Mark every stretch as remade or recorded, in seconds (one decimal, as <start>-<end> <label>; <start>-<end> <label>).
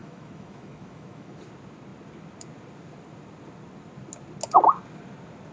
0.0-1.4 remade; 1.4-5.5 recorded